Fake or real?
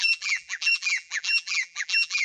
fake